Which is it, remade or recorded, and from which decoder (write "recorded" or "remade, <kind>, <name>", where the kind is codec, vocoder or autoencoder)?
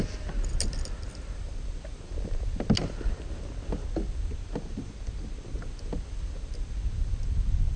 recorded